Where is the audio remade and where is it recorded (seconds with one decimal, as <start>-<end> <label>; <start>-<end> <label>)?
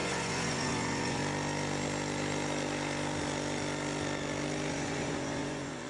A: 0.0-1.2 remade; 1.2-4.7 recorded; 4.7-5.9 remade